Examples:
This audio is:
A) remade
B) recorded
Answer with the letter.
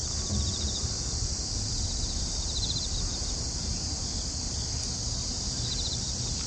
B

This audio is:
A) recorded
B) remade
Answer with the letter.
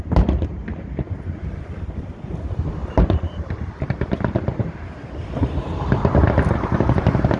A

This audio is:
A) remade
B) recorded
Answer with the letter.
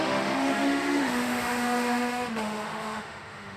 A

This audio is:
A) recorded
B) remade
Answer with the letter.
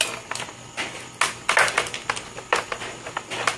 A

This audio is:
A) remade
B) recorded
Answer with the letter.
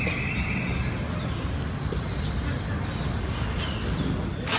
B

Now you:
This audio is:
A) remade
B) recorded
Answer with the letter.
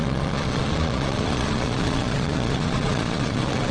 A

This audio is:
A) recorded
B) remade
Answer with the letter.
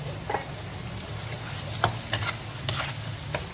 A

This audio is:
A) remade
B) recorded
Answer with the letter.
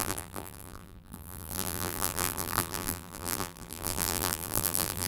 A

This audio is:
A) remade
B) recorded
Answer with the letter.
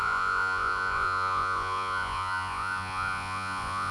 A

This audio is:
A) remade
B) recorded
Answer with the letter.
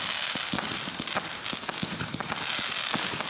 B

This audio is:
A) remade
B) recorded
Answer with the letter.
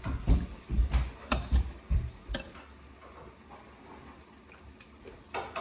B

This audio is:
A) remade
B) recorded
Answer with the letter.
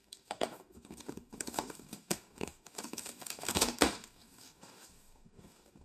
A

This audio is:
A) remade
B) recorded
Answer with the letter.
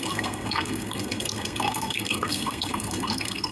A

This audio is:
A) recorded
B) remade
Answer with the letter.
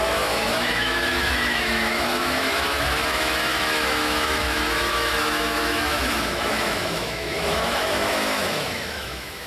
B